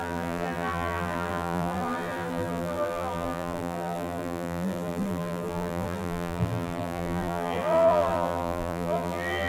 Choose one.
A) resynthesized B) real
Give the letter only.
A